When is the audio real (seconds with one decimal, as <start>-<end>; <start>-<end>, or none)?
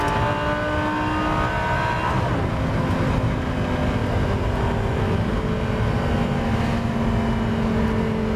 0.0-8.4